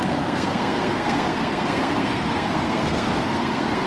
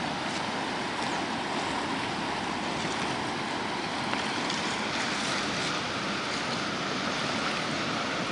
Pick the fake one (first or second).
first